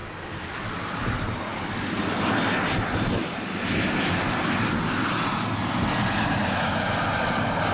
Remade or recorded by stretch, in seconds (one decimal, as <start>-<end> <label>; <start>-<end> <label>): 0.0-7.7 recorded